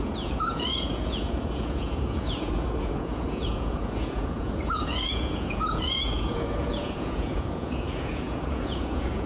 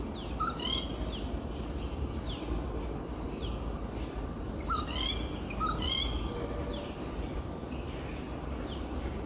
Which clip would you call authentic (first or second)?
second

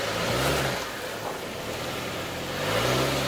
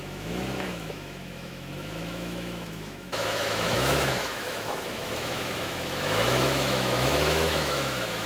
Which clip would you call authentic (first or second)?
first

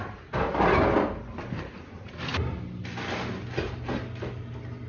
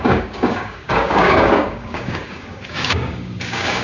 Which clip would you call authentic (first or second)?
first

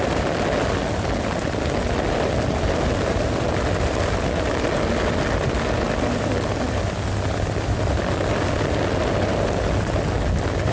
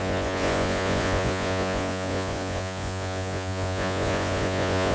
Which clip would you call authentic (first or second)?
first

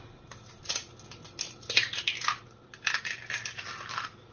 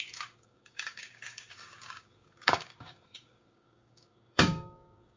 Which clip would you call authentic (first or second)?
first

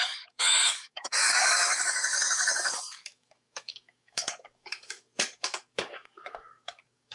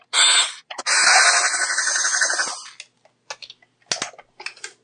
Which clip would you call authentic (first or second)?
second